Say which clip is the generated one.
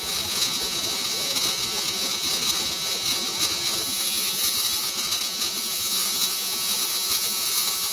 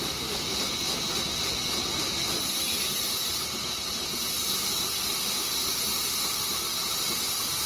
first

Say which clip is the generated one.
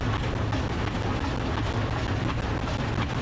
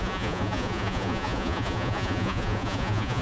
second